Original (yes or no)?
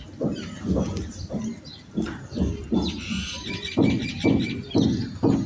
yes